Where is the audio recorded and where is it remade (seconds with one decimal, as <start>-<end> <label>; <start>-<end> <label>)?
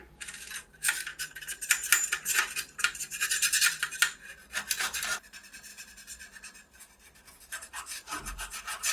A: 0.0-8.9 remade